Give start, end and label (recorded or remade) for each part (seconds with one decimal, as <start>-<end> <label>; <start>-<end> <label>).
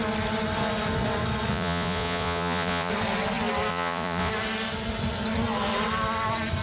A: 0.0-1.5 recorded; 1.5-2.9 remade; 2.9-3.7 recorded; 3.7-4.3 remade; 4.3-6.6 recorded